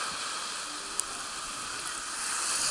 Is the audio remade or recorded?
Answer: recorded